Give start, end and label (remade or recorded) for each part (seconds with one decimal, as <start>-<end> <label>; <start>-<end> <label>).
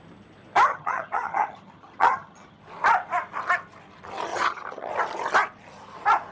0.0-0.7 recorded; 0.7-2.6 remade; 2.6-4.3 recorded; 4.3-4.9 remade; 4.9-6.3 recorded